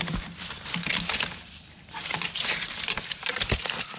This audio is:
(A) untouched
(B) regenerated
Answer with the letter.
B